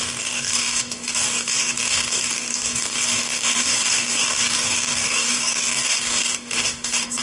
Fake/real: fake